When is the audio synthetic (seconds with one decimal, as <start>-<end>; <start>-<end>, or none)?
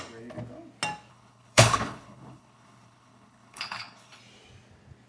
1.1-4.2